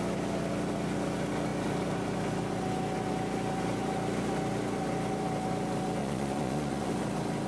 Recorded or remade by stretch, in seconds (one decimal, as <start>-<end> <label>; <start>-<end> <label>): 0.0-6.0 recorded; 6.0-6.9 remade; 6.9-7.5 recorded